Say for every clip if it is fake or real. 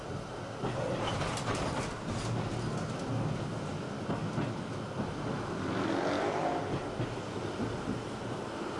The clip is real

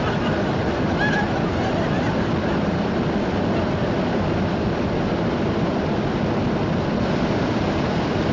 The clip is real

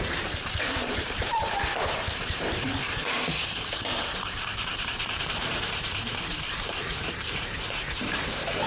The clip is fake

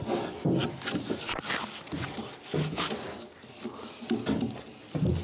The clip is real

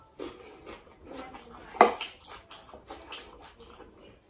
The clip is real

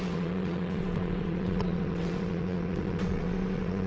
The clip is fake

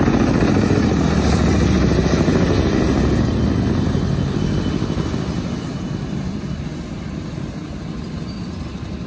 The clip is real